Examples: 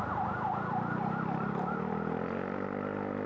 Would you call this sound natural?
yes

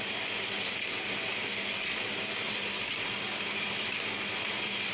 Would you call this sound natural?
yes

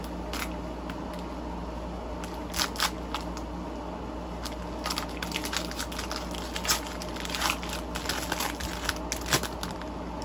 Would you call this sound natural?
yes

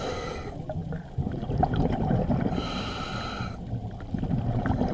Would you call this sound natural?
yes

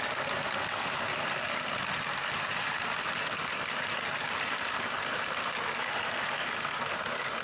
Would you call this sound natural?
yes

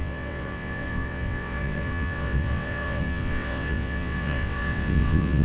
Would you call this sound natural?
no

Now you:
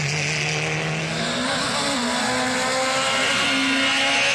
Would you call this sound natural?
yes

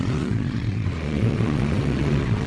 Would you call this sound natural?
no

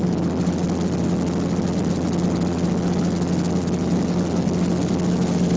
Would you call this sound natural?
yes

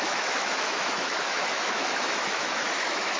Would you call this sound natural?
no